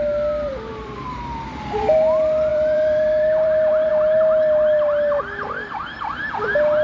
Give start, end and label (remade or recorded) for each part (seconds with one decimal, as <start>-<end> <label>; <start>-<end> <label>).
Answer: 0.0-0.7 recorded; 0.7-1.6 remade; 1.6-2.5 recorded; 2.5-3.9 remade; 3.9-6.8 recorded